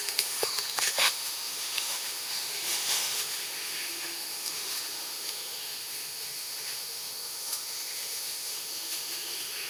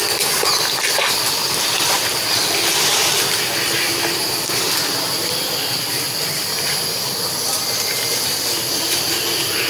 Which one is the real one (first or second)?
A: second